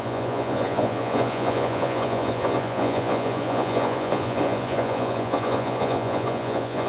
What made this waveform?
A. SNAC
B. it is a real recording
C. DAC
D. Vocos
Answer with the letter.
D